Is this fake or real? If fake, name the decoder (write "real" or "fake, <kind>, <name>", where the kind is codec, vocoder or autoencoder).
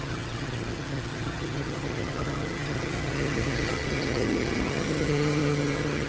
fake, vocoder, HiFi-GAN